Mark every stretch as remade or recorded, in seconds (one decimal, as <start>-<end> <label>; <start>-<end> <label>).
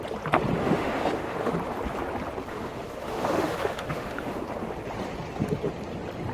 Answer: 0.0-0.6 recorded; 0.6-1.5 remade; 1.5-2.5 recorded; 2.5-4.4 remade; 4.4-6.3 recorded